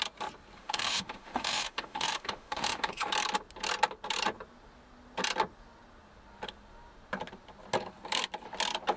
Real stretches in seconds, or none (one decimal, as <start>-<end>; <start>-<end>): 0.0-0.6; 3.1-9.0